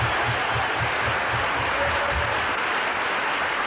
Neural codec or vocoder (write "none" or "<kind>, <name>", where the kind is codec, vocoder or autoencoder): none